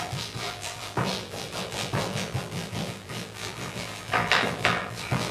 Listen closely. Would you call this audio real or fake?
fake